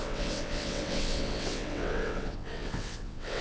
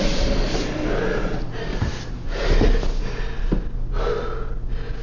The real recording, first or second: second